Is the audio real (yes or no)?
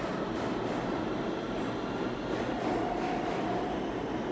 yes